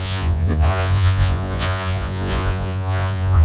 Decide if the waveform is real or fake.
fake